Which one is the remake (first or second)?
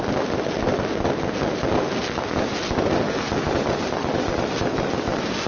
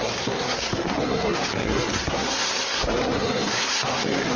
second